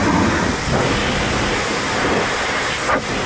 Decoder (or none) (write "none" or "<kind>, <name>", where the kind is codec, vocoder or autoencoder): none